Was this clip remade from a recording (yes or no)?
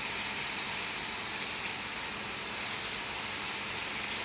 no